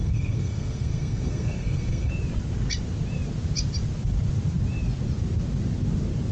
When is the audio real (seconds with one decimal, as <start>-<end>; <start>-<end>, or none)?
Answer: 2.1-6.3